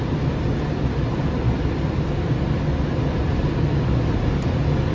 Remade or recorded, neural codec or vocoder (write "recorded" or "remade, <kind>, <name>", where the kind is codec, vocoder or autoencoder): recorded